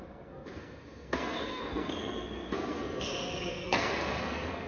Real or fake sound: fake